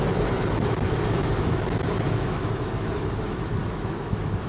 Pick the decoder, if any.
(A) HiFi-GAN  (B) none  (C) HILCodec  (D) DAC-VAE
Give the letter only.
D